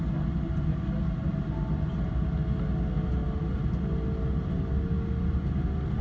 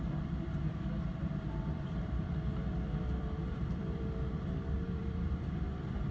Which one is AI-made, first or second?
second